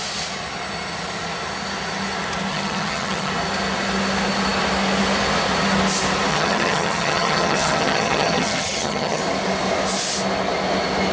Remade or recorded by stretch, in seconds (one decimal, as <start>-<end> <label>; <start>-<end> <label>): 0.0-2.5 recorded; 2.5-3.3 remade; 3.3-6.3 recorded; 6.3-9.2 remade; 9.2-11.1 recorded

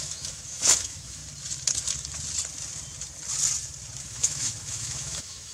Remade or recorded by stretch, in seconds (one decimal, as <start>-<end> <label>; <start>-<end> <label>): 0.0-1.2 remade; 1.2-4.0 recorded; 4.0-5.5 remade

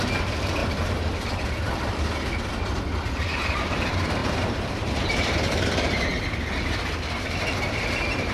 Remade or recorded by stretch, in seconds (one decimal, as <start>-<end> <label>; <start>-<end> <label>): 0.0-0.6 remade; 0.6-3.2 recorded; 3.2-6.1 remade; 6.1-6.9 recorded; 6.9-8.3 remade

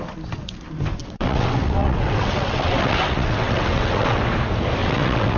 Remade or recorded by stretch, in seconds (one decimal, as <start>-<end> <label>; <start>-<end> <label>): 0.0-1.0 recorded; 1.0-4.2 remade; 4.2-4.8 recorded; 4.8-5.4 remade

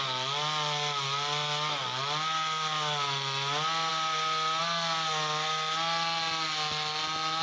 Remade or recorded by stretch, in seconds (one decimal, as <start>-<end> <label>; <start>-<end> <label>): 0.0-7.4 recorded

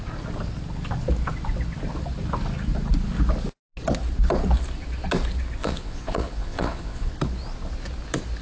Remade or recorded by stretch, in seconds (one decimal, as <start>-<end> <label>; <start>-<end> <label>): 0.0-5.6 recorded; 5.6-7.1 remade; 7.1-8.4 recorded